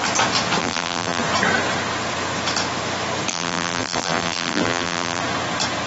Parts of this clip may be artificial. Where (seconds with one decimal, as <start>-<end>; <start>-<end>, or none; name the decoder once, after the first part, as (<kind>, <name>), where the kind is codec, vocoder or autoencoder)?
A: 0.6-1.2 (vocoder, BigVGAN v2); 3.3-5.2